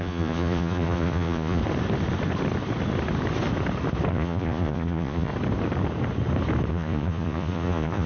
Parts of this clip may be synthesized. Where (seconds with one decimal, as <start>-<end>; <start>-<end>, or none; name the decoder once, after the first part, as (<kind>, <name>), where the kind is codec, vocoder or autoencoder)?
0.0-1.6 (vocoder, Vocos); 4.1-5.3; 6.7-8.1